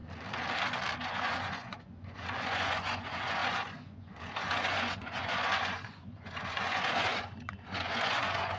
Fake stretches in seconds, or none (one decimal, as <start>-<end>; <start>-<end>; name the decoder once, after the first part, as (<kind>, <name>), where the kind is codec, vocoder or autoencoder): 1.0-8.6 (vocoder, Vocos)